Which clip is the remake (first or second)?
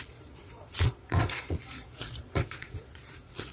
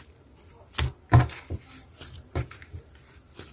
first